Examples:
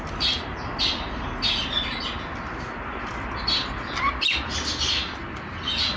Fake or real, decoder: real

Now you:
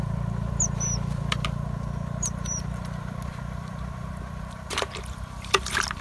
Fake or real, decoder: fake, vocoder, BigVGAN v2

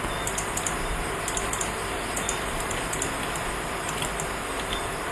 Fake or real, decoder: real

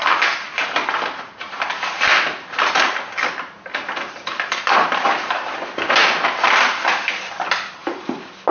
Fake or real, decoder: real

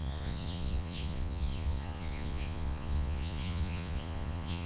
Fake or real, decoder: fake, vocoder, Vocos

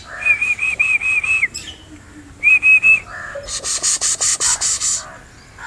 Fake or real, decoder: real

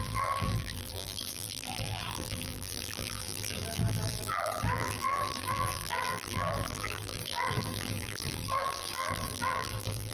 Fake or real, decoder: fake, vocoder, BigVGAN v2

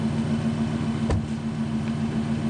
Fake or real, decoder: real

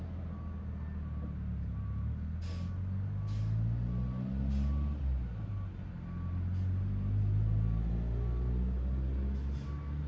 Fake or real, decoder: real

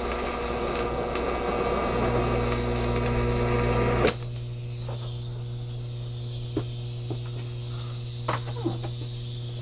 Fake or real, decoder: real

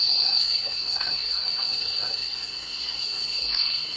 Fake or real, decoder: fake, codec, SNAC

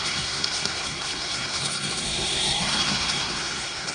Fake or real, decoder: fake, codec, SNAC